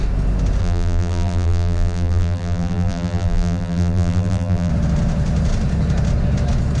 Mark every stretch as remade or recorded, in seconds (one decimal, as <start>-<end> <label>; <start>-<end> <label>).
0.0-0.6 recorded; 0.6-4.7 remade; 4.7-6.8 recorded